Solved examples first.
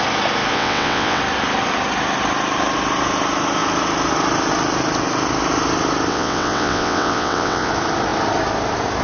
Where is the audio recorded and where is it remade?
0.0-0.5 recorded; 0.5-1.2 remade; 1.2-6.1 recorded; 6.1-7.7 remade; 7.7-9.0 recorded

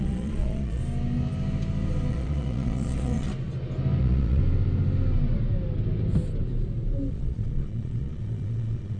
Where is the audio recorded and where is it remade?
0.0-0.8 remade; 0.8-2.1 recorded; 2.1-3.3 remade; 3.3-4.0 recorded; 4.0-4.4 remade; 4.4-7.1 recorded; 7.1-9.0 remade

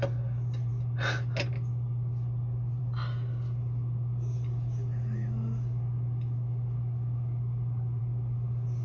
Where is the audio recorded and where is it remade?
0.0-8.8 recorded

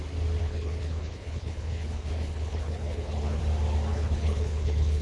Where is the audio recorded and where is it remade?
0.0-0.4 recorded; 0.4-3.4 remade; 3.4-3.9 recorded; 3.9-5.0 remade

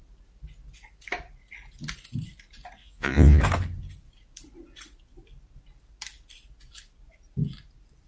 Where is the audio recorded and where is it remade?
0.0-2.8 recorded; 2.8-3.4 remade; 3.4-8.1 recorded

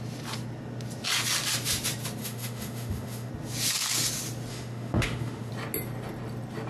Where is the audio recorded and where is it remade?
0.0-2.2 recorded; 2.2-3.3 remade; 3.3-4.5 recorded; 4.5-5.5 remade; 5.5-6.7 recorded

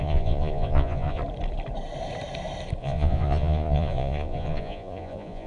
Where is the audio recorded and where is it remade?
0.0-1.2 remade; 1.2-2.8 recorded; 2.8-5.5 remade